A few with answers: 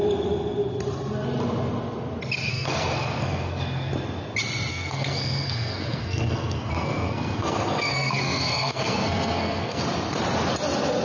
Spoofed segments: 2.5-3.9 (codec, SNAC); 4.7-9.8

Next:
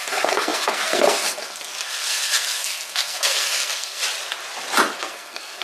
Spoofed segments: 0.0-4.0 (codec, SNAC); 5.0-5.6

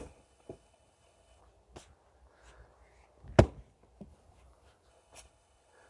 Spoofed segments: 0.0-1.4 (codec, HILCodec); 4.9-5.9

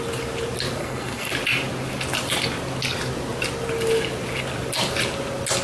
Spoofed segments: 0.8-1.3 (codec, SNAC)

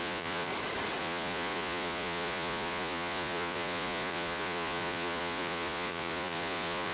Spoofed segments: 0.0-0.5 (vocoder, Vocos); 1.0-6.9